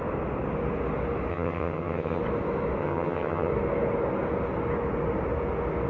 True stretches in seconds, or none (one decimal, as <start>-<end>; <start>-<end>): 0.0-1.3; 2.2-2.8; 3.5-5.9